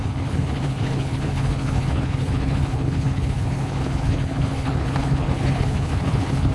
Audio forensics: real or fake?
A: fake